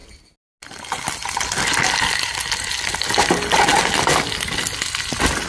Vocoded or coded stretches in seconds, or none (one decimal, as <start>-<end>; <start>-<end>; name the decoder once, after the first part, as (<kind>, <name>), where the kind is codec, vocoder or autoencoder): none

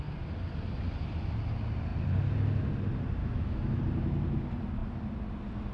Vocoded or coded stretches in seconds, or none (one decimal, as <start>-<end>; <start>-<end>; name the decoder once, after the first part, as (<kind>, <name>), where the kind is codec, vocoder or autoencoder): 3.2-3.8 (autoencoder, DAC-VAE)

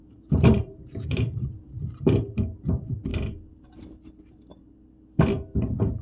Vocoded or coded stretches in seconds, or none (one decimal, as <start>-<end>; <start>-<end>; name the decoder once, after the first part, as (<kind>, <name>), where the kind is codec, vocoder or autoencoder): 0.0-1.8 (vocoder, BigVGAN v2)

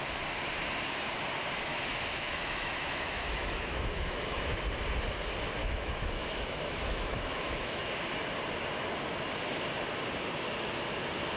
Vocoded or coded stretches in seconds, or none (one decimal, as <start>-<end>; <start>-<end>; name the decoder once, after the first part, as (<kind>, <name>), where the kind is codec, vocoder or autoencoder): 1.7-4.5 (autoencoder, DAC-VAE); 5.6-7.9

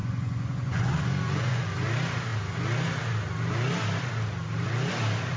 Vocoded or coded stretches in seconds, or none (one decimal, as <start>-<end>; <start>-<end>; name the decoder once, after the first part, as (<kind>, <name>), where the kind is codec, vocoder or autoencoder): 0.0-1.6 (vocoder, Vocos)

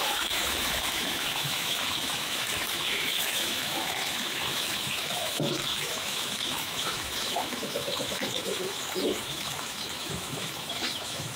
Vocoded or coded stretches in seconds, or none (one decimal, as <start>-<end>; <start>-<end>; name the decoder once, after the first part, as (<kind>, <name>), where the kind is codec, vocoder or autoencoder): 0.0-11.4 (autoencoder, DAC-VAE)

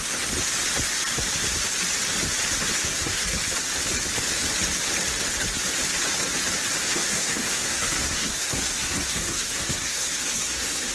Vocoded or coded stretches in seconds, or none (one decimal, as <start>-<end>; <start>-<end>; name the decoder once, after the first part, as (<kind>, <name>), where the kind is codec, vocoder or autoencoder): 2.7-3.4 (codec, SNAC); 6.8-10.9

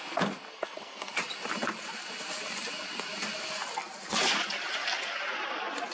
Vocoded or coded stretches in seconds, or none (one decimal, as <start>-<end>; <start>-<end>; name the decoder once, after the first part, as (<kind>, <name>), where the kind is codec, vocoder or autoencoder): 0.5-1.1 (codec, SNAC)